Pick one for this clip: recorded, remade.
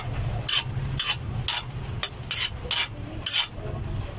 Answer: recorded